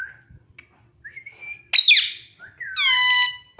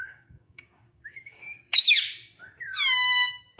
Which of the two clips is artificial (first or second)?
second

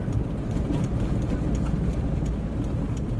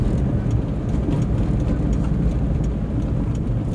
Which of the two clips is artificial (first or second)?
first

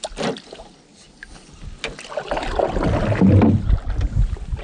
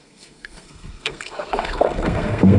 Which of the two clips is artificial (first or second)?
second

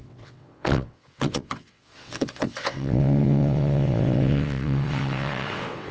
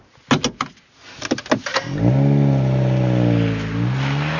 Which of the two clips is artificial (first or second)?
first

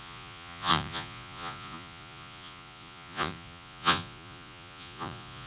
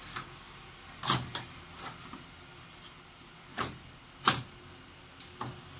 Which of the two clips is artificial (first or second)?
first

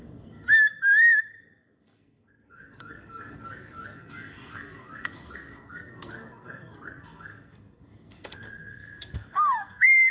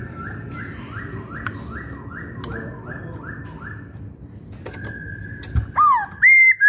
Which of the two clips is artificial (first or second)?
first